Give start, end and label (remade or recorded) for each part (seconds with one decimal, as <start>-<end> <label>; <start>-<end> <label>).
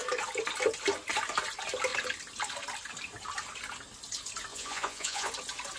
0.0-4.5 recorded; 4.5-5.3 remade; 5.3-5.8 recorded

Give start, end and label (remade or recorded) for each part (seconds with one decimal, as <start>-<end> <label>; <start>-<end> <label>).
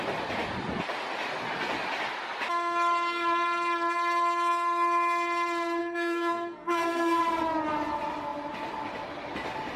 0.0-5.8 recorded; 5.8-7.2 remade; 7.2-9.8 recorded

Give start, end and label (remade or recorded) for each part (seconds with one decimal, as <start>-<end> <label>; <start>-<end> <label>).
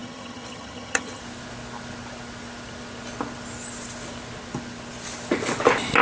0.0-1.2 remade; 1.2-6.0 recorded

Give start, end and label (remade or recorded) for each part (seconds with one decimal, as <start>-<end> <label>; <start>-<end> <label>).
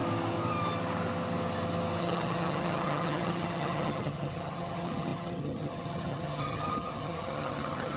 0.0-2.0 recorded; 2.0-8.0 remade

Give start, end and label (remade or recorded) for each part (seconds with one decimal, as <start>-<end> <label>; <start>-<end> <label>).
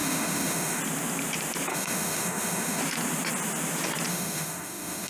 0.0-0.8 remade; 0.8-1.7 recorded; 1.7-2.8 remade; 2.8-4.1 recorded; 4.1-5.1 remade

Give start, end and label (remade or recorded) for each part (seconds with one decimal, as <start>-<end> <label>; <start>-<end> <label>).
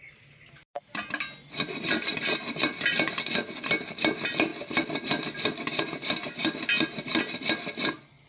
0.0-8.3 recorded